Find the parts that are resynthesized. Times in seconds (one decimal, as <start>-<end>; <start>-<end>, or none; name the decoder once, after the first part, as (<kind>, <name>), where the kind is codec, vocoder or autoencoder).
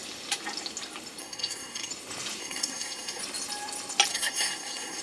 1.2-1.9 (codec, SNAC); 2.4-3.2; 4.1-5.0